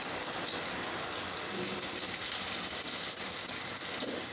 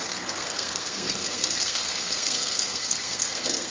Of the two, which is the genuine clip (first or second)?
first